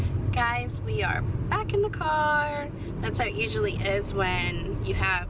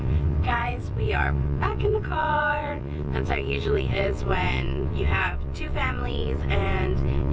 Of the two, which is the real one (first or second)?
first